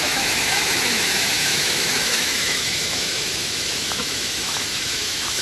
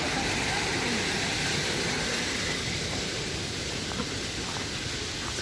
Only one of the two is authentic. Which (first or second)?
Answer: second